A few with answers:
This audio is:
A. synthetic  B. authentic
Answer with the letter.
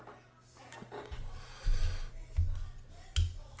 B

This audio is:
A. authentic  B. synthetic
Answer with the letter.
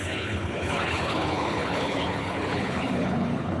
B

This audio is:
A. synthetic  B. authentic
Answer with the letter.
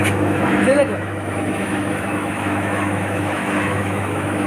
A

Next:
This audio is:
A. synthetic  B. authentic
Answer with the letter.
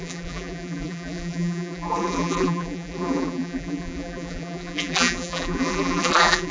A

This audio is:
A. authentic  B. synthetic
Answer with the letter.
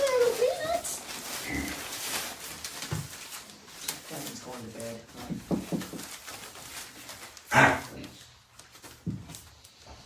A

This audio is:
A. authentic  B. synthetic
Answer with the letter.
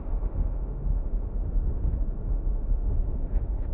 B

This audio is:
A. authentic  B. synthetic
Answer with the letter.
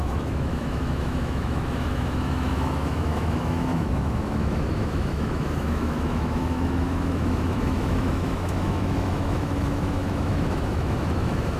B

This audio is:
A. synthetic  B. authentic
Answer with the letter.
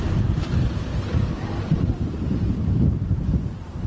A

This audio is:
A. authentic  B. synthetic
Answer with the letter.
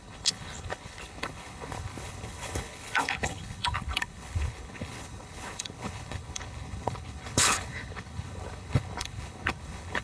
B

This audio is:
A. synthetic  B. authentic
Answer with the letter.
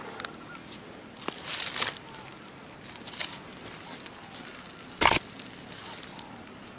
B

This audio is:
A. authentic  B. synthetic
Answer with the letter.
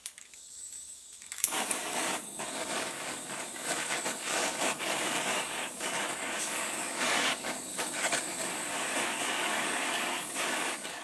B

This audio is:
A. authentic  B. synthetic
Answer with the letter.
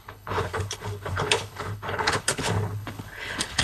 B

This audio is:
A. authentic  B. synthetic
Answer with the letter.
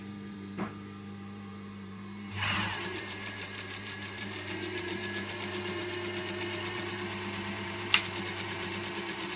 B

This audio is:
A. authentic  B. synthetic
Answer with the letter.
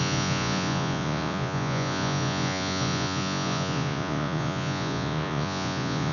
B